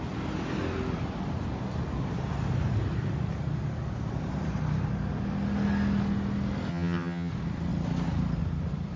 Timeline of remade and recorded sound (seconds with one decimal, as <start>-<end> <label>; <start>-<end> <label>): 0.0-6.7 recorded; 6.7-7.3 remade; 7.3-9.0 recorded